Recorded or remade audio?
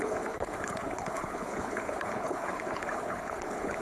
remade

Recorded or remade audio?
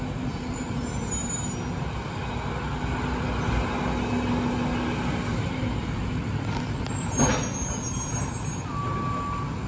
recorded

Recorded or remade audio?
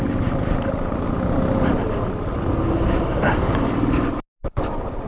recorded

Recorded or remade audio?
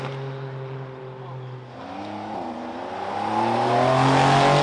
recorded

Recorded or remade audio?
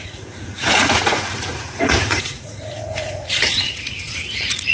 remade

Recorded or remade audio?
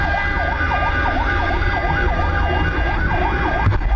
recorded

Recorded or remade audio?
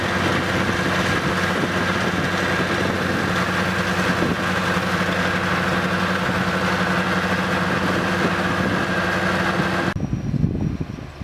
recorded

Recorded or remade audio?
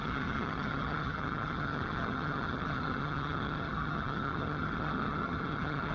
remade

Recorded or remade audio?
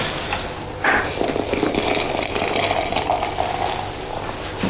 recorded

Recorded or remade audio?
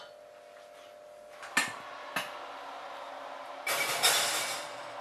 recorded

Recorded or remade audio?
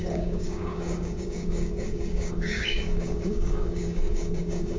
remade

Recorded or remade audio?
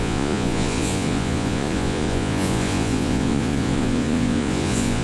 remade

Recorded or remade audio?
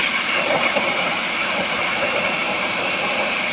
remade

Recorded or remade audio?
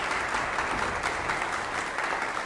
recorded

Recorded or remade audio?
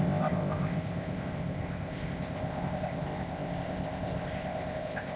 remade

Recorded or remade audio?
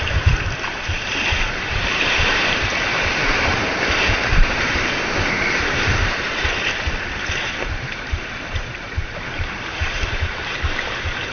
remade